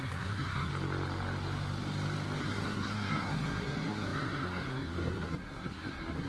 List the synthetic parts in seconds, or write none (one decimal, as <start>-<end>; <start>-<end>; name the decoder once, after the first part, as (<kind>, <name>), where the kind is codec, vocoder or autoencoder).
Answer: 0.0-0.7 (codec, SNAC); 2.4-6.3